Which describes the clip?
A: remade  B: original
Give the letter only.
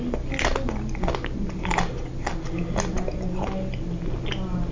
B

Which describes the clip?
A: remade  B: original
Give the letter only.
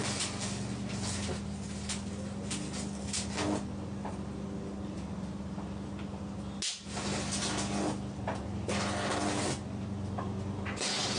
B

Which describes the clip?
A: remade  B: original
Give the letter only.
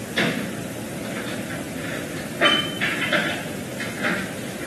B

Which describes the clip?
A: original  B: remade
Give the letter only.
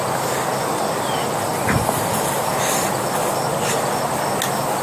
A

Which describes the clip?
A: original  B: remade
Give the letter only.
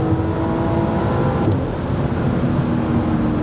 A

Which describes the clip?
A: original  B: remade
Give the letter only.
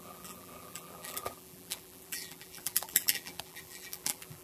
B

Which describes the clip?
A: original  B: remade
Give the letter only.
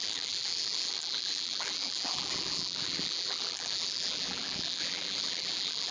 B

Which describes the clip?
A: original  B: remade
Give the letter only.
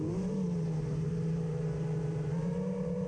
B